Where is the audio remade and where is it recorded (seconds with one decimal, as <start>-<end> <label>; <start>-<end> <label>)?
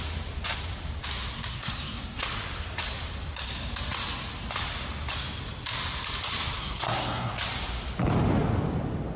0.0-1.5 recorded; 1.5-2.2 remade; 2.2-6.6 recorded; 6.6-7.3 remade; 7.3-9.2 recorded